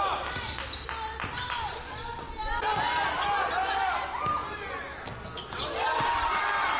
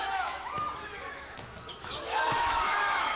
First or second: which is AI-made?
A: second